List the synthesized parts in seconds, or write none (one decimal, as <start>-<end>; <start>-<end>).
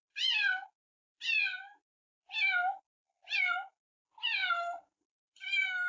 1.5-2.2; 4.4-5.9